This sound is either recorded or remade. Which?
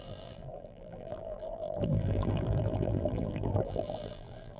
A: remade